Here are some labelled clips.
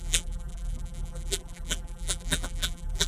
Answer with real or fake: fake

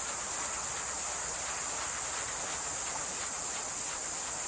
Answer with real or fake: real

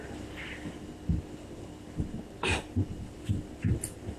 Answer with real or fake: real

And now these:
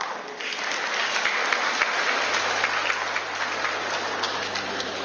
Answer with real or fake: real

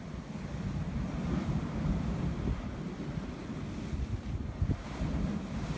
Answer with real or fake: real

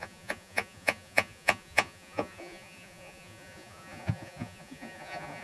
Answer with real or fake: fake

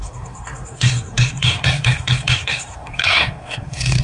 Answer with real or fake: fake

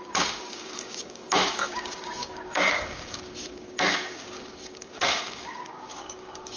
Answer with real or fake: fake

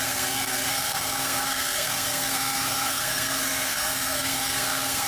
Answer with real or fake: fake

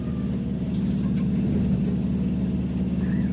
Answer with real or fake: real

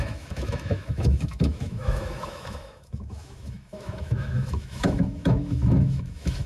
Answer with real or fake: fake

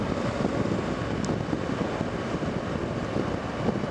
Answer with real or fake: real